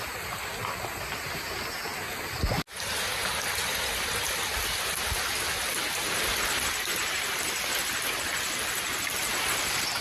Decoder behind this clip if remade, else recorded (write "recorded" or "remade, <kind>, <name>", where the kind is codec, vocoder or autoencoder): recorded